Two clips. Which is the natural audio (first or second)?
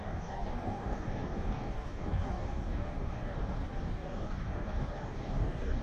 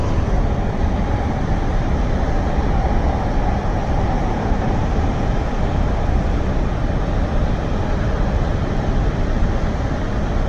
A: second